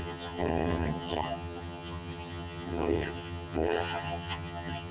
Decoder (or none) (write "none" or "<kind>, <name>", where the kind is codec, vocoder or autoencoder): vocoder, HiFi-GAN